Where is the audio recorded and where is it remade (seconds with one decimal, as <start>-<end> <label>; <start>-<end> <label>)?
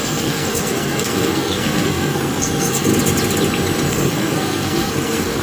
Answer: 0.0-2.9 remade; 2.9-3.9 recorded; 3.9-5.4 remade